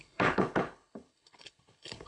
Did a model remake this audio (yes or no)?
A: yes